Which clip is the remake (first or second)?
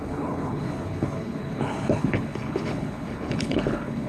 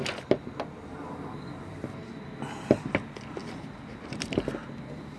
first